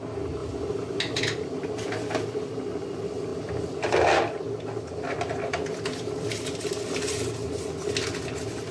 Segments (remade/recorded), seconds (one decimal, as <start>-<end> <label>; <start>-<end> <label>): 0.0-8.7 recorded